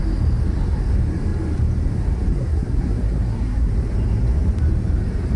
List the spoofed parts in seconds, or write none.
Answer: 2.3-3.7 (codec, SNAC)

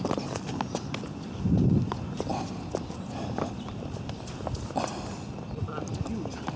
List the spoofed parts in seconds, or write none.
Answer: none

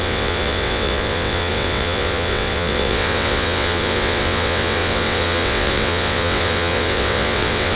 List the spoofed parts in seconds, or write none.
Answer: 0.0-7.8 (vocoder, WaveNeXt)

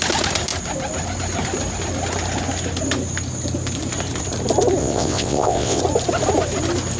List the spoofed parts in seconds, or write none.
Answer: 4.8-5.8 (vocoder, WaveNeXt)